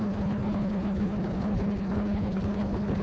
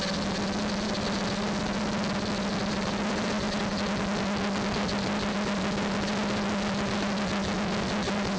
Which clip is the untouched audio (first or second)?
second